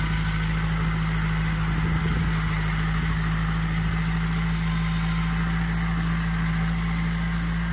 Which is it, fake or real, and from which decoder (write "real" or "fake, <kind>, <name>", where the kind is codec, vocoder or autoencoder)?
real